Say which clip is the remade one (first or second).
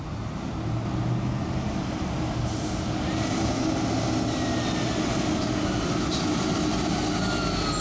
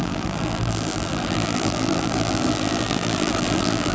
second